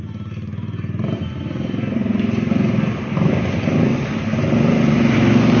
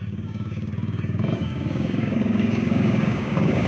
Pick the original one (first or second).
first